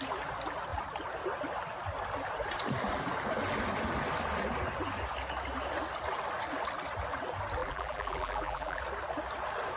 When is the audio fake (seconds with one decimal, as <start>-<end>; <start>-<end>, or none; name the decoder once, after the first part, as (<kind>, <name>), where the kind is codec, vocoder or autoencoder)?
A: 7.6-8.8 (vocoder, BigVGAN v2)